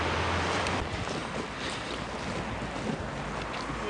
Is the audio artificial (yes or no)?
no